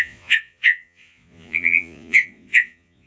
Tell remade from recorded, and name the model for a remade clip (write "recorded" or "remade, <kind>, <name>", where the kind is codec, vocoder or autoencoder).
remade, vocoder, Vocos